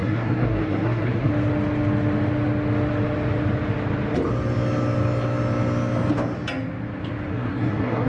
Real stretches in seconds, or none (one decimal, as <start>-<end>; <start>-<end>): 1.3-7.3